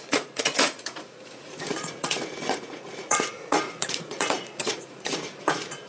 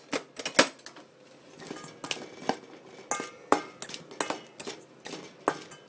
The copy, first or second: first